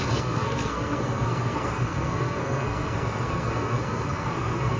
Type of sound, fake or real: fake